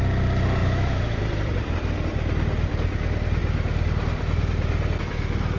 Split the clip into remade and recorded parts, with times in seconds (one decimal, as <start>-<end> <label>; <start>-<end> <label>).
0.0-0.6 recorded; 0.6-1.2 remade; 1.2-5.6 recorded